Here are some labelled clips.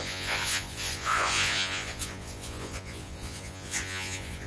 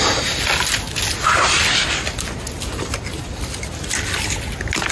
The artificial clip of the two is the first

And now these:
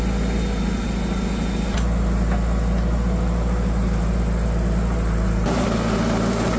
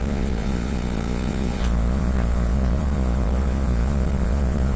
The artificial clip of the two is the second